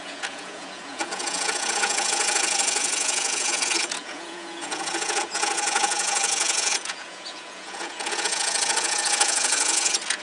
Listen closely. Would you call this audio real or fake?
fake